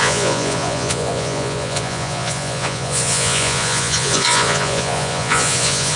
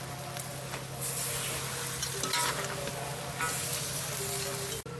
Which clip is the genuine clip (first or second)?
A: second